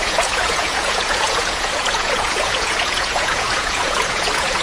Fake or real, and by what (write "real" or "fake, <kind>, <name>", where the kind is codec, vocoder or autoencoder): fake, vocoder, Vocos